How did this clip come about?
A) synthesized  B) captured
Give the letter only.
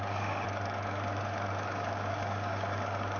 A